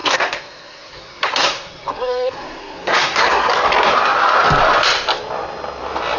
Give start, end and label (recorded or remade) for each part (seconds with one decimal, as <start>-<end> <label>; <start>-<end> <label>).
0.0-3.5 remade; 3.5-6.2 recorded